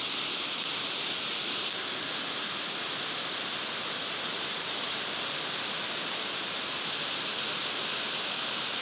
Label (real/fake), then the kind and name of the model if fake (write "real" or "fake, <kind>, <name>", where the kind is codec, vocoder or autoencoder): real